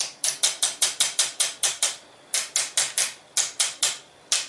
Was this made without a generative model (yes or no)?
yes